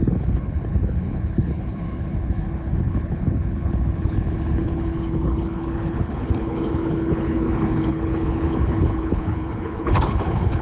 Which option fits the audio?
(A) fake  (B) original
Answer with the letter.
A